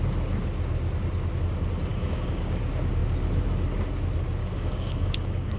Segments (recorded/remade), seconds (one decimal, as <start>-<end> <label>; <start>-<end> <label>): 0.0-1.9 recorded; 1.9-2.6 remade; 2.6-4.4 recorded; 4.4-5.6 remade

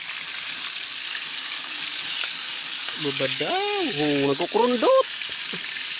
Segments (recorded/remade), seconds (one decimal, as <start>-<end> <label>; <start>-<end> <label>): 0.0-1.3 recorded; 1.3-4.9 remade; 4.9-6.0 recorded